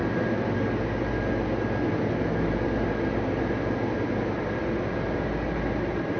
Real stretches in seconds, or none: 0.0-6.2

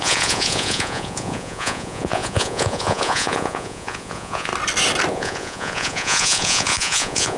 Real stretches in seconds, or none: 4.5-5.1